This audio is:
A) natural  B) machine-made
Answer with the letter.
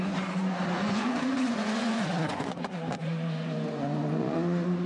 B